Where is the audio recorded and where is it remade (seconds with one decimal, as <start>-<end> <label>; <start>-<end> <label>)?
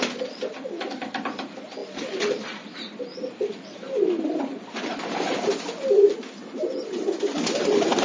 0.0-8.0 remade